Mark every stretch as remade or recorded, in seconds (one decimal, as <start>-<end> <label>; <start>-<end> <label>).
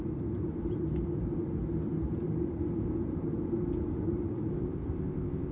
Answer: 0.0-4.5 recorded; 4.5-5.5 remade